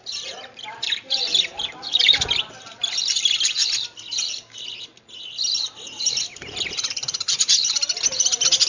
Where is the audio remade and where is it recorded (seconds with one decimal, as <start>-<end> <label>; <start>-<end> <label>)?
0.0-8.7 recorded